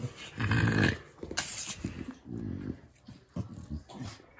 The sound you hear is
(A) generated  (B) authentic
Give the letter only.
B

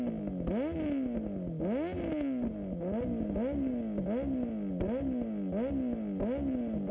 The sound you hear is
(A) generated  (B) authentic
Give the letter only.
B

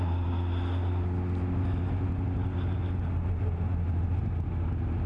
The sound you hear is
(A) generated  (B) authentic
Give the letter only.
B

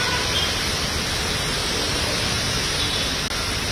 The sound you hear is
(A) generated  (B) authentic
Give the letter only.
B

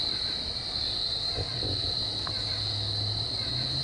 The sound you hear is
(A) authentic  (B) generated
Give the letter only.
A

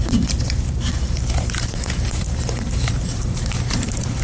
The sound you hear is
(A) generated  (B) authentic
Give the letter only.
A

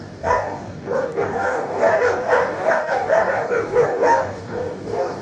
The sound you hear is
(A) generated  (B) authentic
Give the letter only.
A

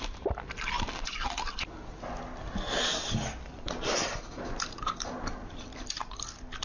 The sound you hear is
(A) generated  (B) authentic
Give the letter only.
B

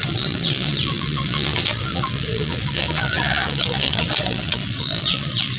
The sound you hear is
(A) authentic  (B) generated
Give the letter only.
B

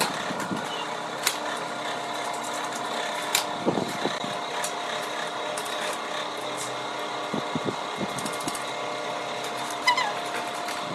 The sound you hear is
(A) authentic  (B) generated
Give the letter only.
A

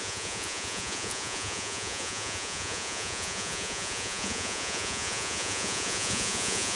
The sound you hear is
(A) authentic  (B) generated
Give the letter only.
B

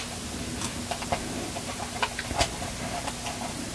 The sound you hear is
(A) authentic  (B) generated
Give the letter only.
A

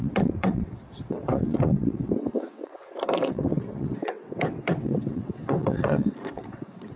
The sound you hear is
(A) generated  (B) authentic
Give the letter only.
A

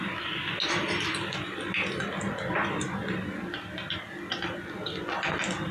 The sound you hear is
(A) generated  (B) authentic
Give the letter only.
B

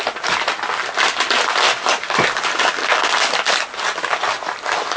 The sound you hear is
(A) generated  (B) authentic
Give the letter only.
B